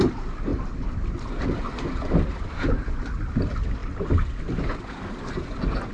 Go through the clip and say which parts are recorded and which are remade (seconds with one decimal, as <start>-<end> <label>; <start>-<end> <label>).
0.0-5.9 recorded